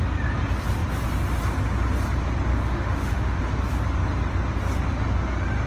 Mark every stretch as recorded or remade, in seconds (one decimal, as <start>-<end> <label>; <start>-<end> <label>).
0.0-2.5 recorded; 2.5-3.4 remade; 3.4-5.7 recorded